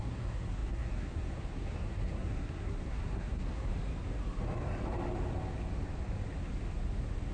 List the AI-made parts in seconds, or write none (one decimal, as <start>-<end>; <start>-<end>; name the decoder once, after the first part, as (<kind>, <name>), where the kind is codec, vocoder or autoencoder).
0.0-3.7 (codec, SNAC)